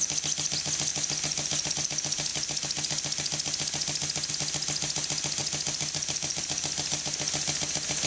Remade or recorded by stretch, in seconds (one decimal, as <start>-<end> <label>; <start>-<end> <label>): 0.0-8.1 recorded